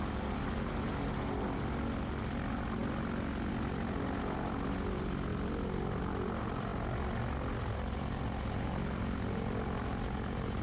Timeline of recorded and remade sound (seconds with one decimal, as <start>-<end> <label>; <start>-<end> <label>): 0.0-10.6 recorded